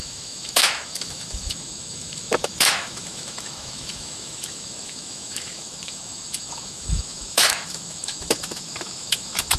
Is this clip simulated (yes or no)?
yes